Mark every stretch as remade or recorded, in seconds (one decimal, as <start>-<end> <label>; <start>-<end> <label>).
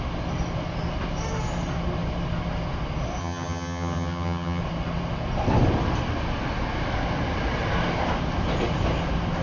0.0-3.2 recorded; 3.2-4.6 remade; 4.6-9.4 recorded